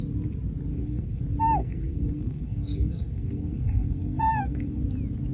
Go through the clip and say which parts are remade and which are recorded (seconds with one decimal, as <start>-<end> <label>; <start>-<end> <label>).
0.0-0.7 recorded; 0.7-1.2 remade; 1.2-1.6 recorded; 1.6-4.8 remade; 4.8-5.3 recorded